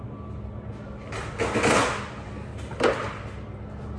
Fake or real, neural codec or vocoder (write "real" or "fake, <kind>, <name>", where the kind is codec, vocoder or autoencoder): real